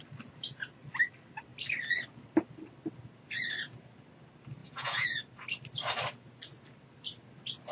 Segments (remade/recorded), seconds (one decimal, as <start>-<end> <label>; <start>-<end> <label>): 0.0-4.6 recorded; 4.6-5.2 remade; 5.2-7.7 recorded